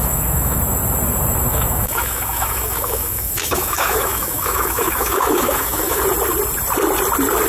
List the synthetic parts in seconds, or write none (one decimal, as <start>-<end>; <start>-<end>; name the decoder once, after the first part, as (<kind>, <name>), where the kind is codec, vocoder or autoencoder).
0.0-0.6 (autoencoder, DAC-VAE); 1.5-6.0